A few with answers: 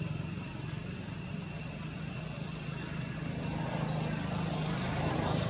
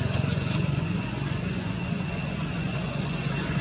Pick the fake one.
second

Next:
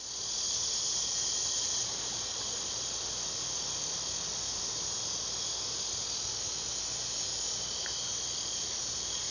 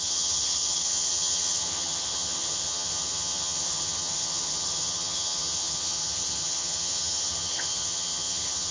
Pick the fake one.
second